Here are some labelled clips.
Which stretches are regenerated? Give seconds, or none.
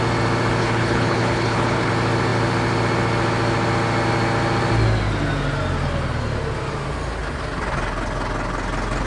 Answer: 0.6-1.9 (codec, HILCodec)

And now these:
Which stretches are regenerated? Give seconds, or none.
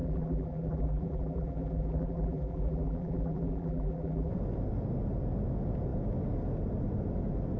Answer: 0.0-4.3 (vocoder, BigVGAN v2)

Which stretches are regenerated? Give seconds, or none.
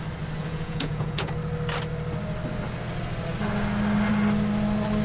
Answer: 0.4-1.3 (vocoder, Vocos)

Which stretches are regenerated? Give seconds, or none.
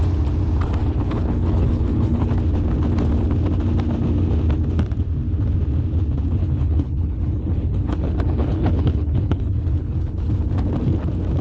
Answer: 0.8-2.3 (codec, HILCodec); 6.4-10.3